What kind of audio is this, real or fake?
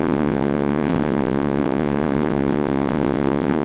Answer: fake